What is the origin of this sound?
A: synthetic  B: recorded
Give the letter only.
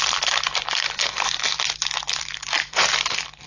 A